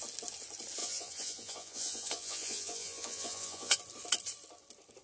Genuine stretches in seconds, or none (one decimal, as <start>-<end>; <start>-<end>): 0.0-0.8; 3.8-5.0